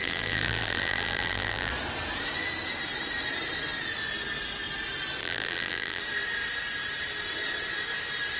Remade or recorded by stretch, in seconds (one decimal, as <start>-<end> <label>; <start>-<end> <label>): 0.0-1.7 remade; 1.7-5.2 recorded; 5.2-6.0 remade; 6.0-8.4 recorded